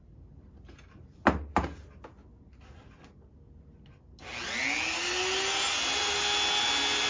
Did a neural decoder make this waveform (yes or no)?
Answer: no